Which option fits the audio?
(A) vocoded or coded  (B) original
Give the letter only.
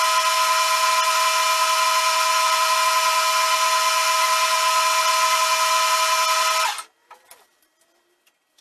B